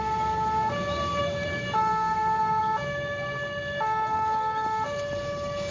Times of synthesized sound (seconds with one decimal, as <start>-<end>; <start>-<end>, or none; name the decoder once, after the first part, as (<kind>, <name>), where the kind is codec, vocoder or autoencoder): 1.2-2.6 (vocoder, BigVGAN v2)